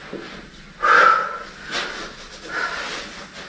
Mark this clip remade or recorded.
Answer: recorded